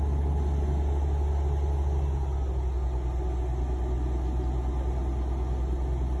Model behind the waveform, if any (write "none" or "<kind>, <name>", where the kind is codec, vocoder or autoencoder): none